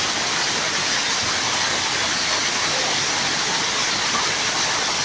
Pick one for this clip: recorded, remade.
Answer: recorded